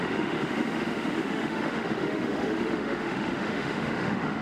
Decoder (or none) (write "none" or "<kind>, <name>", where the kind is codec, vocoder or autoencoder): autoencoder, DAC-VAE